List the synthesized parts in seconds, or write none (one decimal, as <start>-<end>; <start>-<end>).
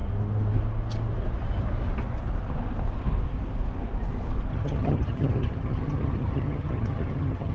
4.5-7.5